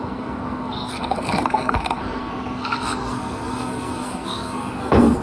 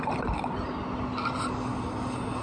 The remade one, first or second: first